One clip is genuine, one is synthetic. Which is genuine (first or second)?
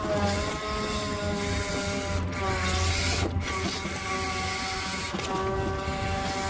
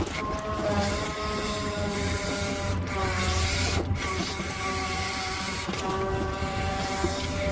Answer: first